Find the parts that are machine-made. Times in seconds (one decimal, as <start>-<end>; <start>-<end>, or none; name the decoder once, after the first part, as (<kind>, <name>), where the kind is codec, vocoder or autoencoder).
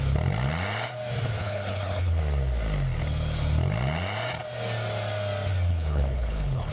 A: 1.4-2.2 (codec, HILCodec); 5.7-6.7